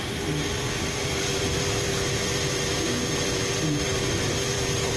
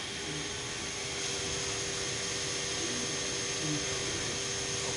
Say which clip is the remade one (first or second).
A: first